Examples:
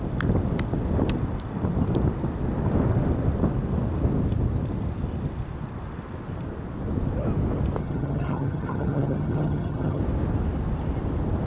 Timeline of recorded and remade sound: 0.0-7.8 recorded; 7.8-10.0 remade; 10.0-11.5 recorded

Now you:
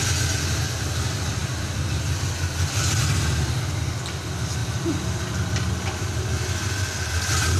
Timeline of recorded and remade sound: 0.0-4.6 recorded; 4.6-7.1 remade; 7.1-7.6 recorded

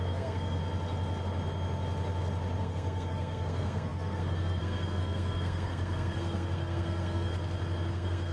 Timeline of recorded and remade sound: 0.0-0.6 remade; 0.6-2.6 recorded; 2.6-7.3 remade; 7.3-7.9 recorded; 7.9-8.3 remade

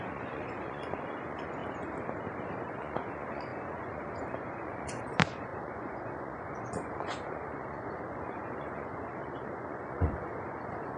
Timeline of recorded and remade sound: 0.0-1.6 remade; 1.6-2.7 recorded; 2.7-11.0 remade